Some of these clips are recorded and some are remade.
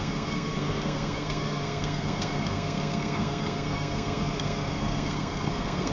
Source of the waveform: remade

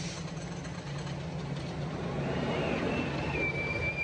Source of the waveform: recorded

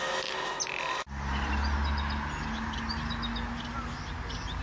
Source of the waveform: recorded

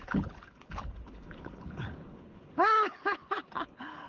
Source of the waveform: remade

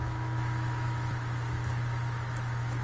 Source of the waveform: remade